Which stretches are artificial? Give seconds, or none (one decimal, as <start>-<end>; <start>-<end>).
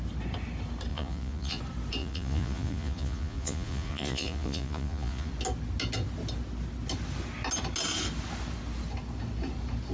0.9-1.6; 2.0-5.3